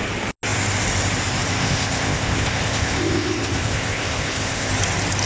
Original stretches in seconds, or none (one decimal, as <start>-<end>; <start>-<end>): 0.0-1.6; 4.7-5.3

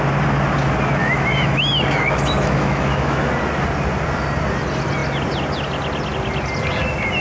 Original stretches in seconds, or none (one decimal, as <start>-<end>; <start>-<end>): 0.0-1.0; 3.3-7.2

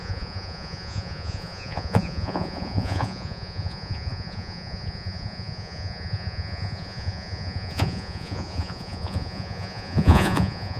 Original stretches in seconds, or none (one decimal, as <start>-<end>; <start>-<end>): none

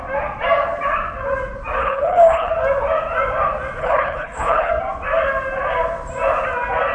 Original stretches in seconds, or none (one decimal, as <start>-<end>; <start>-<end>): 0.0-1.8; 2.5-3.8; 4.7-6.9

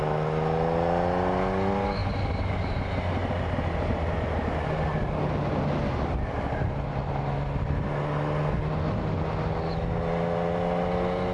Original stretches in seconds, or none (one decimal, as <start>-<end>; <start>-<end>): 0.0-11.3

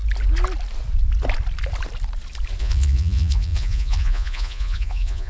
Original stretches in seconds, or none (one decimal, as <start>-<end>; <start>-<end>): 0.0-2.6

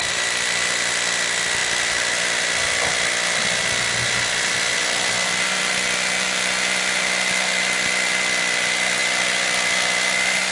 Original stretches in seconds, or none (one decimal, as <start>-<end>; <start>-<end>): 0.0-1.6; 3.6-10.5